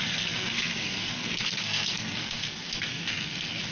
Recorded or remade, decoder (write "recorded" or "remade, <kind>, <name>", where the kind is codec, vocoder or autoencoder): remade, codec, SNAC